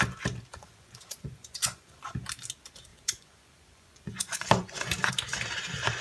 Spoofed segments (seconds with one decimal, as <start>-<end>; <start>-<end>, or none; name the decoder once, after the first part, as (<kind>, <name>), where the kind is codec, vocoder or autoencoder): 0.5-2.0 (vocoder, Vocos); 2.9-5.1